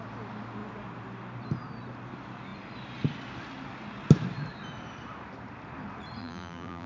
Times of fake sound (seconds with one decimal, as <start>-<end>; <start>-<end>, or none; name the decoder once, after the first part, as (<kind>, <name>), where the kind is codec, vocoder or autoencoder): 6.2-6.9 (vocoder, BigVGAN v2)